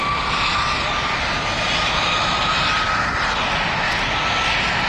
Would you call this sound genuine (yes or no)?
yes